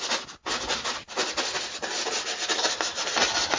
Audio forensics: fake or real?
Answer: real